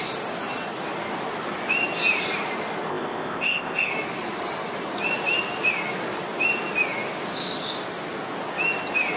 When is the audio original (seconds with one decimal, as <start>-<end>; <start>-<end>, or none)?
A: 0.0-2.9; 3.9-9.2